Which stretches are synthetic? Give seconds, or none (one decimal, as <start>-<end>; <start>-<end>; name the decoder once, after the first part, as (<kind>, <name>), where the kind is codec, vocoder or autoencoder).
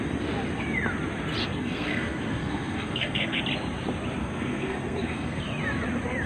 1.4-3.4 (codec, SNAC); 4.2-5.4